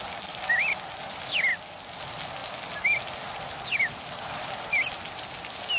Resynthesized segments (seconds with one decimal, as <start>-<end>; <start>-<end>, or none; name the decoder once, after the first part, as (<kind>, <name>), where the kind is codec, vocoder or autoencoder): none